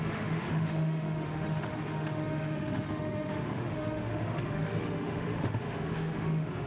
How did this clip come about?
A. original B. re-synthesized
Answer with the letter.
B